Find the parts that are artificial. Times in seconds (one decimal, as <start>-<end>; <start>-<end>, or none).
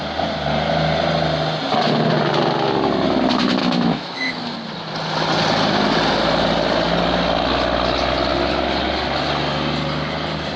3.6-4.4